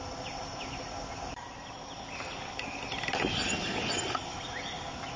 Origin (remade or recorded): recorded